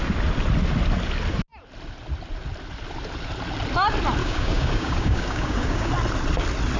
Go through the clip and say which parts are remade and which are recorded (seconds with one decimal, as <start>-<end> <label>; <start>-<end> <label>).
0.0-4.2 recorded; 4.2-5.9 remade; 5.9-6.8 recorded